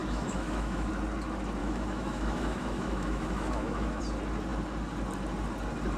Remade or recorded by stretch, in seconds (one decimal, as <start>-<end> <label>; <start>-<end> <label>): 0.0-0.9 remade; 0.9-1.6 recorded; 1.6-4.0 remade; 4.0-6.0 recorded